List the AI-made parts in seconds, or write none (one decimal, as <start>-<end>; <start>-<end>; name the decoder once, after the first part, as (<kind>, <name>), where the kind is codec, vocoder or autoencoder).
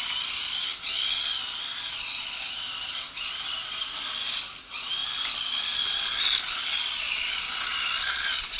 5.0-6.2 (vocoder, BigVGAN v2)